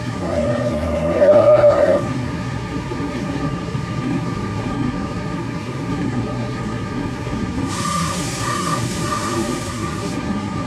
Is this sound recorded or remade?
remade